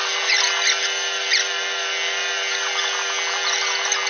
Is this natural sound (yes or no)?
yes